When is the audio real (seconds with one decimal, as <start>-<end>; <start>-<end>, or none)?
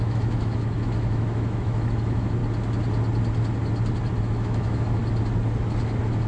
2.4-4.2; 5.0-6.3